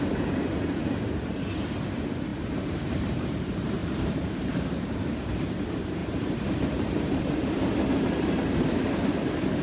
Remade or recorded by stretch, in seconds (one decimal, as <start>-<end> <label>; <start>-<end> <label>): 0.0-6.0 remade; 6.0-7.9 recorded; 7.9-9.6 remade